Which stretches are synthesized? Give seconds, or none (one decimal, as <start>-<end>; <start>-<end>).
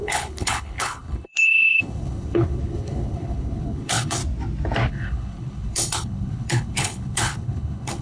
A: 0.0-4.2; 4.9-8.0